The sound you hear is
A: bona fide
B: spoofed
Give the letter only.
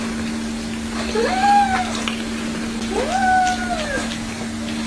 A